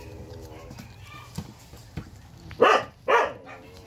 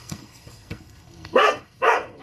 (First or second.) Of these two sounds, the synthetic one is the second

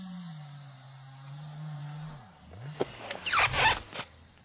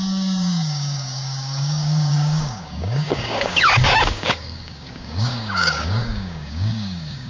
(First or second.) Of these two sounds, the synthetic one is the second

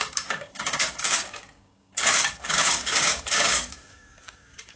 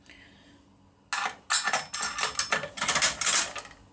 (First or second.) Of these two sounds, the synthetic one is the first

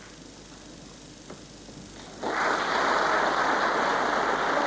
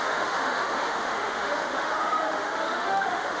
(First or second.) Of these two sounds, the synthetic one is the second